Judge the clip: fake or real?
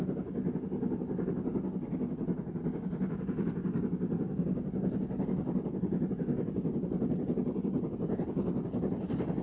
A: real